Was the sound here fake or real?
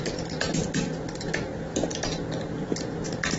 real